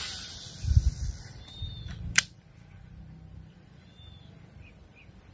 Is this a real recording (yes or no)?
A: no